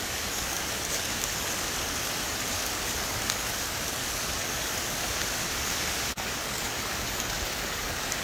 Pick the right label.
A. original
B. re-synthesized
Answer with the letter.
B